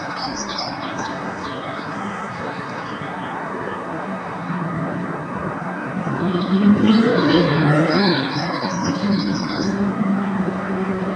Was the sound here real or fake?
fake